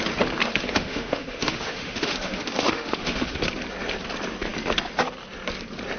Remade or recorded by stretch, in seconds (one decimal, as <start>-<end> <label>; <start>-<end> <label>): 0.0-0.4 recorded; 0.4-3.4 remade; 3.4-6.0 recorded